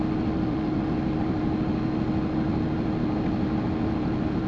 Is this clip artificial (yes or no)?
no